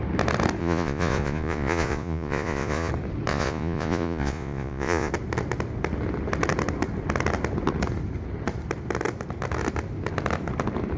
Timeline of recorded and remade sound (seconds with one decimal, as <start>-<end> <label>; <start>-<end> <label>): 0.0-0.6 recorded; 0.6-2.9 remade; 2.9-3.3 recorded; 3.3-5.1 remade; 5.1-11.0 recorded